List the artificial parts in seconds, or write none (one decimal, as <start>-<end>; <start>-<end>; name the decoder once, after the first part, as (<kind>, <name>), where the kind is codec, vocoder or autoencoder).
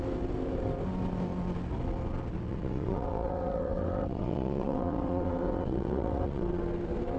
2.5-6.6 (vocoder, WaveNeXt)